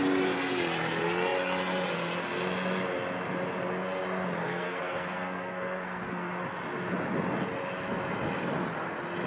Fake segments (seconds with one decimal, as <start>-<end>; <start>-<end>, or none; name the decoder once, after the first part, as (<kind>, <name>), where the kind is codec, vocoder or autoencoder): 4.4-6.3 (codec, SNAC)